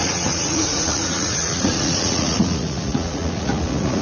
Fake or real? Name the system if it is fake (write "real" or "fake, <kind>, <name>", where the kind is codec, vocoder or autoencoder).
fake, vocoder, Vocos